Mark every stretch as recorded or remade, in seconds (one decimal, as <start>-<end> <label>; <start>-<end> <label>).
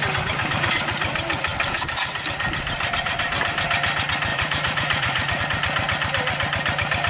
0.0-4.3 recorded; 4.3-5.4 remade; 5.4-7.1 recorded